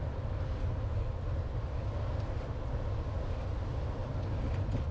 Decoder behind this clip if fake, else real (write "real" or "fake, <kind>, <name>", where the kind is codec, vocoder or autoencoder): real